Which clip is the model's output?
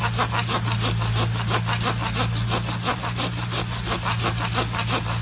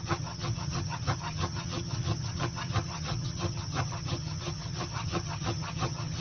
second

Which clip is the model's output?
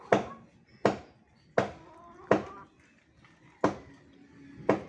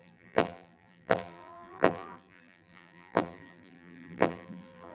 second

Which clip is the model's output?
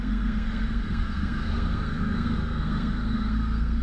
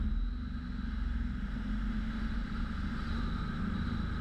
first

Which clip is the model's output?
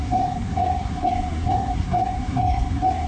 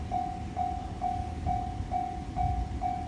first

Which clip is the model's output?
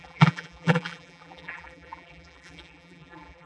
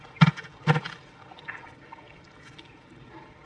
first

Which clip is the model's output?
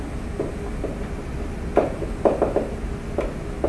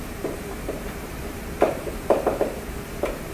second